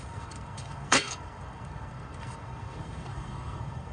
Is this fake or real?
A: fake